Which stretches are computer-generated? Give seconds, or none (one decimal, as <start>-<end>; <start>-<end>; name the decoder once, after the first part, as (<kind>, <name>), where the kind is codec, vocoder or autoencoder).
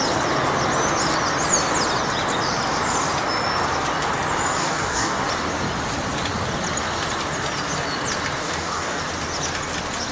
4.6-5.2 (codec, DAC); 8.4-9.0